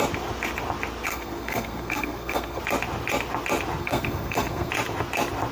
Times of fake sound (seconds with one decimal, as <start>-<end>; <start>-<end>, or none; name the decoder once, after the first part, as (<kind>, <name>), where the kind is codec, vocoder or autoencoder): 1.1-2.6 (codec, SNAC); 3.8-4.7